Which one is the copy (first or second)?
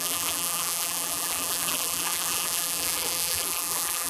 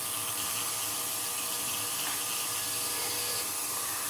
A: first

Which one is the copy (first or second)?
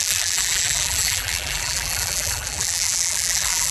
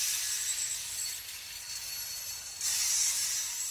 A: first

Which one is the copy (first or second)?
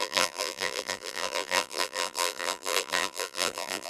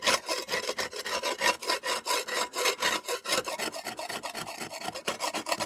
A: first